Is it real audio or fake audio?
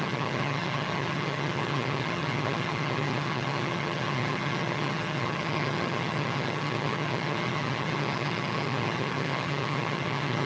fake